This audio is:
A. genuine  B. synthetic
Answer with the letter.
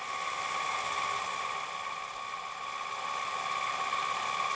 A